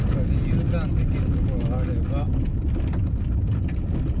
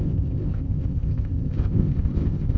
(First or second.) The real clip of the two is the first